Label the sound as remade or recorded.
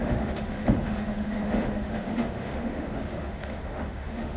remade